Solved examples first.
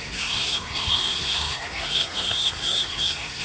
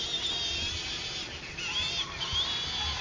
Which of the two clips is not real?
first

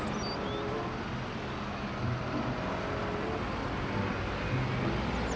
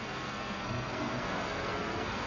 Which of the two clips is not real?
second